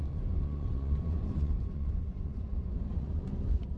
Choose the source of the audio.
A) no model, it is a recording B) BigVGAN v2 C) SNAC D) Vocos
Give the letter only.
D